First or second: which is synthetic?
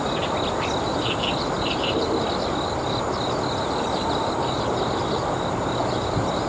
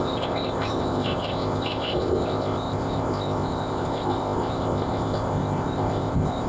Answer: second